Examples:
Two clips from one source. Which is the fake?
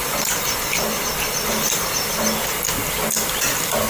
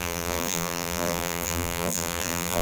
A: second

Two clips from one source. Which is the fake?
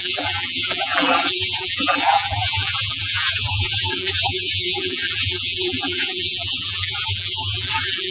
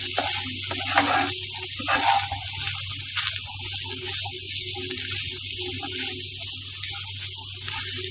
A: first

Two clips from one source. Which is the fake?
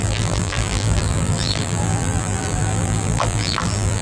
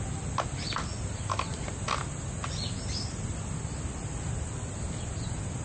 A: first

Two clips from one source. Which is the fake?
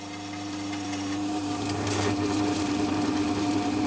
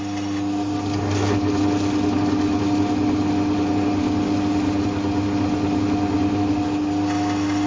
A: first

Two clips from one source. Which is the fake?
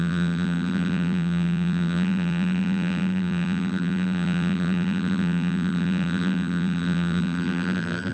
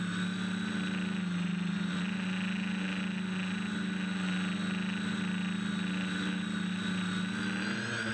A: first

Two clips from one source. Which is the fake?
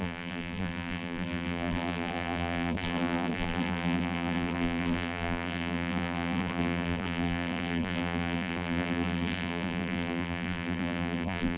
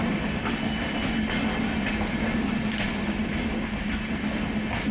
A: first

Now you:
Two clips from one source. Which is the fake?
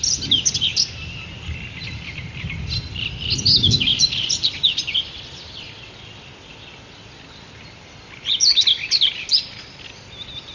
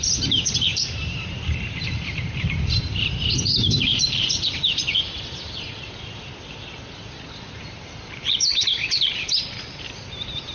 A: second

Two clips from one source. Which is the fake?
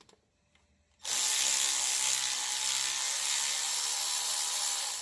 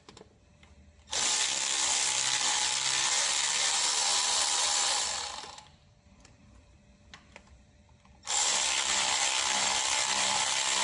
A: second